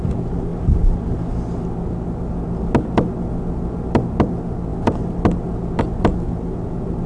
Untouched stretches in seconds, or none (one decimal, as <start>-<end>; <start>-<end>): 0.0-7.1